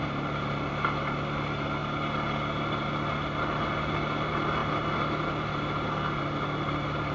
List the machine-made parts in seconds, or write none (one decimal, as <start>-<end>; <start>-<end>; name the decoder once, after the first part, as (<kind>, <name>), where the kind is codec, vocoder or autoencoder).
none